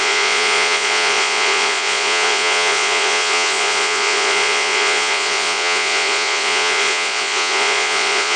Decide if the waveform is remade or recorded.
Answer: remade